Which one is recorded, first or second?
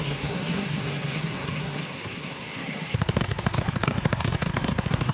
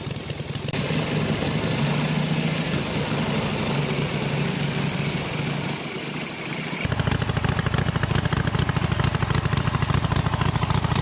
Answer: second